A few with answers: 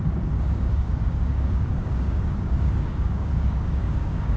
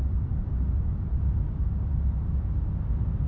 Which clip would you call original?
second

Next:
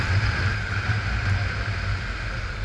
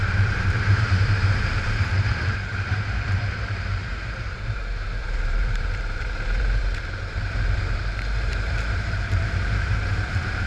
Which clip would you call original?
first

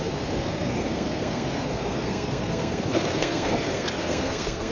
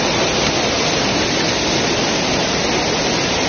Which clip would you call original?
second